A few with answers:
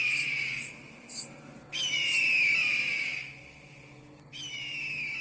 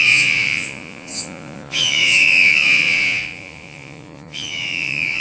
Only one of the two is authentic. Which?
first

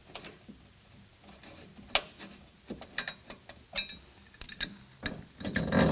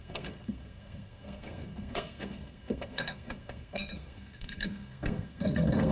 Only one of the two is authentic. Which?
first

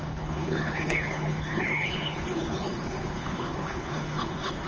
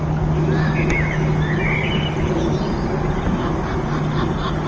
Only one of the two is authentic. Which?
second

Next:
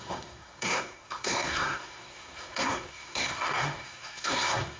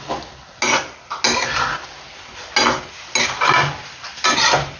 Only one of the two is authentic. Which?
second